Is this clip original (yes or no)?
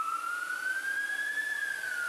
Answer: yes